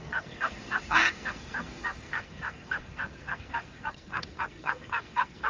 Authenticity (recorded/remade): remade